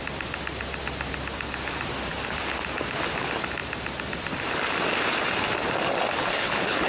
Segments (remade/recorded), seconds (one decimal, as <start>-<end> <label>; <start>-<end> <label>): 0.0-6.2 recorded; 6.2-6.9 remade